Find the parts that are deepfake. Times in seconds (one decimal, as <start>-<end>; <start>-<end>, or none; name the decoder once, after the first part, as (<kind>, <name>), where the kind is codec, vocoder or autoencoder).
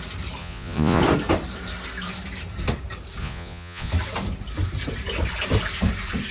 0.4-1.0 (vocoder, Vocos); 3.2-3.9